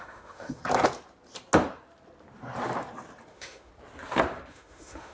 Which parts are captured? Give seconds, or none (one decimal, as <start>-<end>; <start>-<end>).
0.6-3.3; 3.7-4.5